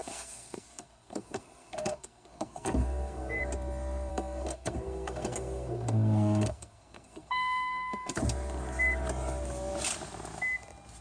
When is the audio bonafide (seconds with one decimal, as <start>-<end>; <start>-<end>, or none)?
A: 3.4-4.1; 8.2-11.0

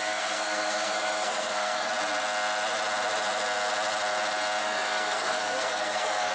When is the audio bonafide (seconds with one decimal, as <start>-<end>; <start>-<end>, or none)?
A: 1.9-4.6